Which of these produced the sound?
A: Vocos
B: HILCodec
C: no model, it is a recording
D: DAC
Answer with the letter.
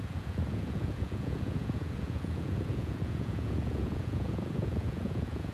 A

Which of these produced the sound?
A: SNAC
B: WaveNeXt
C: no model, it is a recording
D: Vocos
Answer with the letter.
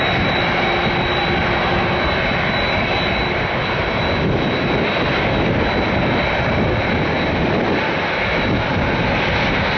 C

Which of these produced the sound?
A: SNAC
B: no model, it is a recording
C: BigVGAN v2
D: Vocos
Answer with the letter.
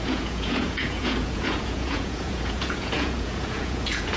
D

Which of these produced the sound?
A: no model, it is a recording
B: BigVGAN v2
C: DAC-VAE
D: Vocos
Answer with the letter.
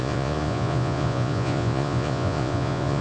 D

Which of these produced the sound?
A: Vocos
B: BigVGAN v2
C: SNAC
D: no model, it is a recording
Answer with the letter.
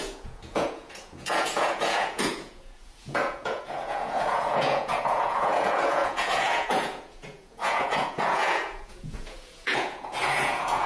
A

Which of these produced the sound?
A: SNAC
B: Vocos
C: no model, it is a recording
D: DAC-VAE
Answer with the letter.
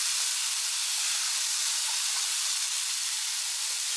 C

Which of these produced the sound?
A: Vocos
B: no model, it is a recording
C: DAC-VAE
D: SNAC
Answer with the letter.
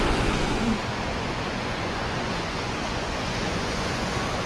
A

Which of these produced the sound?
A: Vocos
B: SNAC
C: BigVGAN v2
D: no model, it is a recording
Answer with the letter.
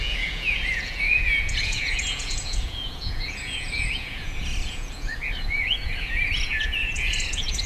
A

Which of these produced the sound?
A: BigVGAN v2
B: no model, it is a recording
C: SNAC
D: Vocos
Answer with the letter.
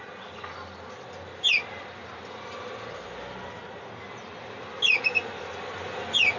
B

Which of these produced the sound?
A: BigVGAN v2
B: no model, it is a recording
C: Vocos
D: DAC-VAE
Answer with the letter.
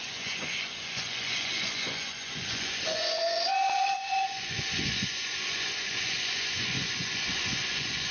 C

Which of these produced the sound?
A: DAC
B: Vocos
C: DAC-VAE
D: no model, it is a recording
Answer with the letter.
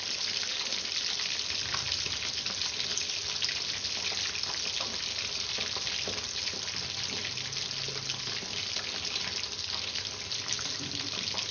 D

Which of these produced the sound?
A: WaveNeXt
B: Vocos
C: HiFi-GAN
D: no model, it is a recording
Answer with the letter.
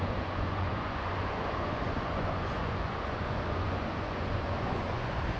B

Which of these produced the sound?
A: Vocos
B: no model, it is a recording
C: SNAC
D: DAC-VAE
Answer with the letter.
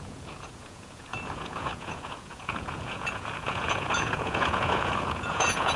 A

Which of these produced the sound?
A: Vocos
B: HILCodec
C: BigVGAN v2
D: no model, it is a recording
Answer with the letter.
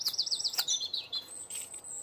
A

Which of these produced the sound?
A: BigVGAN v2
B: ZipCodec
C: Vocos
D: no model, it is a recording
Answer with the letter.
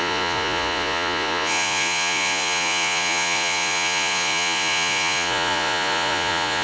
C